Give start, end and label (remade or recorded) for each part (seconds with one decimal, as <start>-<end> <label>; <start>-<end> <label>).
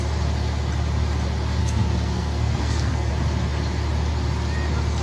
0.0-1.6 recorded; 1.6-3.1 remade; 3.1-5.0 recorded